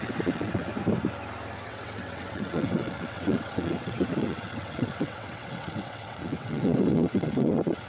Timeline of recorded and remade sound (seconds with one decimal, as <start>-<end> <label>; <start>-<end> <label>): 0.0-0.7 remade; 0.7-1.6 recorded; 1.6-7.9 remade